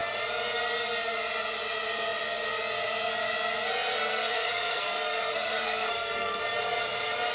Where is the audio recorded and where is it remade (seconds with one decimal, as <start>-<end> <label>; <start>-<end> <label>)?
0.0-4.1 recorded; 4.1-6.4 remade; 6.4-7.3 recorded